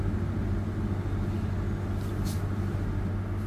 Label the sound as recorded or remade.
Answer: recorded